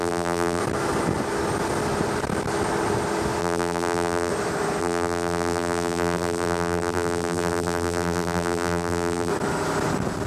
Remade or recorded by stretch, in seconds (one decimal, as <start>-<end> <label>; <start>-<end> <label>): 0.0-0.6 remade; 0.6-3.4 recorded; 3.4-4.3 remade; 4.3-4.8 recorded; 4.8-9.3 remade; 9.3-10.3 recorded